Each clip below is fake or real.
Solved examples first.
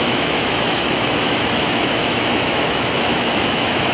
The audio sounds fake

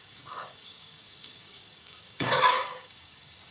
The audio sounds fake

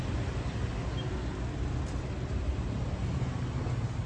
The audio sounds real